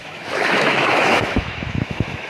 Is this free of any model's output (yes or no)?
no